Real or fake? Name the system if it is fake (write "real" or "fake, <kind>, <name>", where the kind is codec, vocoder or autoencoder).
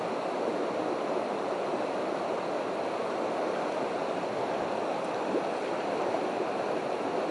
real